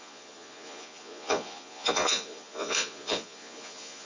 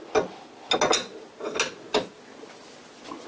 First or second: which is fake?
first